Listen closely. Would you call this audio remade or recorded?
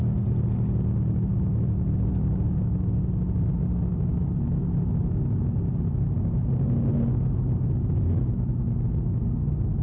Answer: recorded